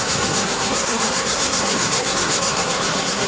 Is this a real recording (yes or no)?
no